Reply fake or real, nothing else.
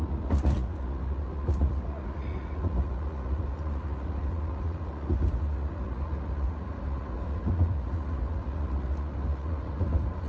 fake